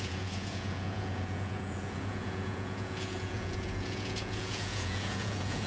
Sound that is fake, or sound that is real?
fake